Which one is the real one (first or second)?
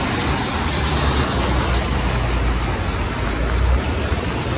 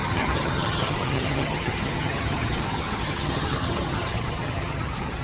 first